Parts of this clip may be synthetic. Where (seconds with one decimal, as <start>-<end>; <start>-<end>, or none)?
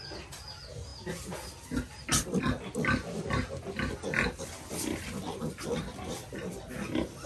none